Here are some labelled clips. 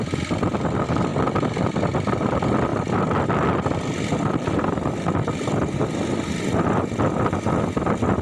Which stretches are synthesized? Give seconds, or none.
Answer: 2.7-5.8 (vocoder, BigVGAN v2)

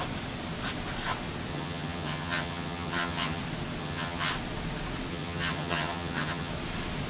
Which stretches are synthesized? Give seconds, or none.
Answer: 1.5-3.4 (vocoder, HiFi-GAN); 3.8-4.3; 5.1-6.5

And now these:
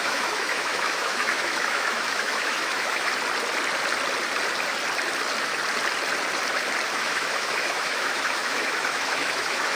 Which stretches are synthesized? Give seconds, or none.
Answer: 0.0-3.1 (autoencoder, DAC-VAE); 6.9-9.7